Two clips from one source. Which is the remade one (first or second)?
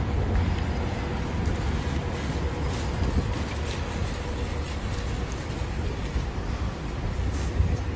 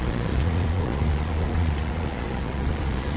second